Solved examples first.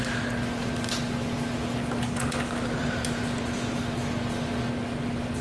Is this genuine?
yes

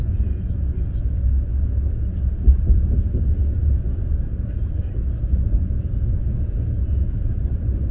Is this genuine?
yes